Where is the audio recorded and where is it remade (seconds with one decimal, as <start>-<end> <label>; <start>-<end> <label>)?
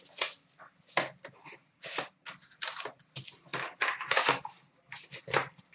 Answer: 0.0-1.6 recorded; 1.6-2.2 remade; 2.2-3.5 recorded; 3.5-5.2 remade; 5.2-5.7 recorded